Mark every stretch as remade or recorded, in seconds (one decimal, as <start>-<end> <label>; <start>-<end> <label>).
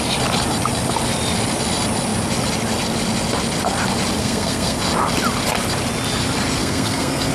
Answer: 0.0-4.2 recorded; 4.2-4.8 remade; 4.8-6.6 recorded; 6.6-7.3 remade